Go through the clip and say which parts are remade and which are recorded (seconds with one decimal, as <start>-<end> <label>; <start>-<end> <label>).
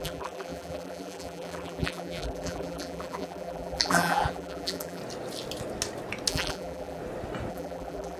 0.0-5.0 remade; 5.0-6.3 recorded; 6.3-7.0 remade; 7.0-7.5 recorded; 7.5-8.2 remade